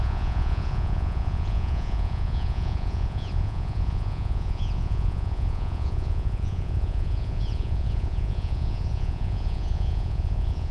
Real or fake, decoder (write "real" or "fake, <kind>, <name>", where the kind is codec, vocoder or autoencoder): fake, vocoder, Vocos